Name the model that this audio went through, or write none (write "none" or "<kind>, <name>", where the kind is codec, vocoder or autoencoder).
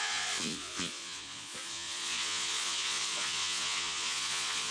vocoder, Vocos